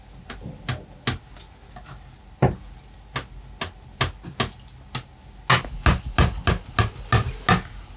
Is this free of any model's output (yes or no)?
yes